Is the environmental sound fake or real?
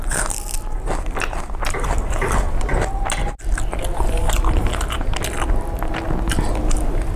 real